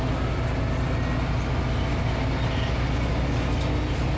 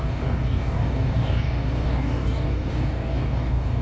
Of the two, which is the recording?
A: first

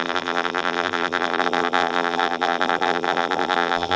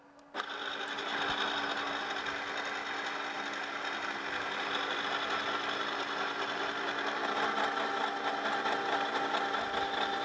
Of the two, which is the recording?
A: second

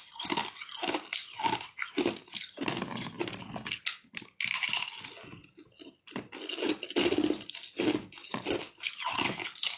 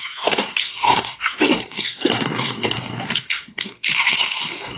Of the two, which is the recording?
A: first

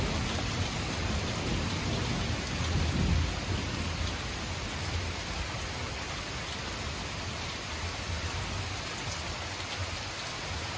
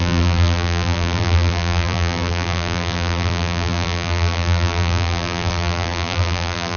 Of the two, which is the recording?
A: first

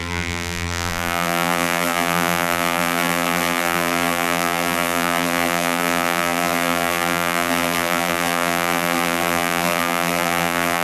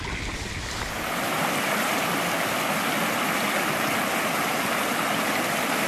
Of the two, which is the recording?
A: second